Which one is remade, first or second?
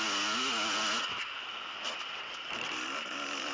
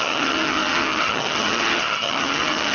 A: second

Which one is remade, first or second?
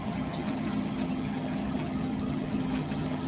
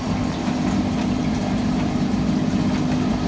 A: first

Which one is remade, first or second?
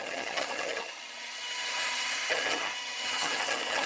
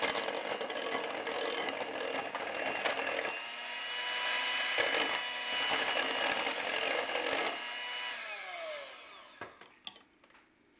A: first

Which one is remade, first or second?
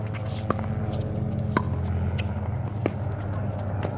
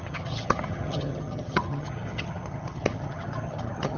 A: second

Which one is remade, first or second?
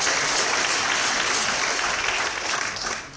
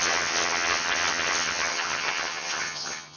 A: second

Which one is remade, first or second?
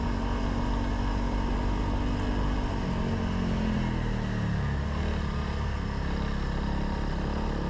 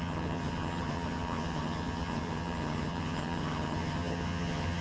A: second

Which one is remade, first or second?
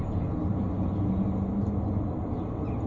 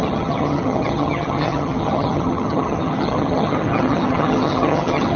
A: second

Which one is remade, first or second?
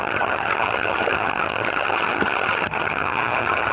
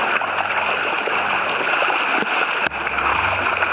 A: first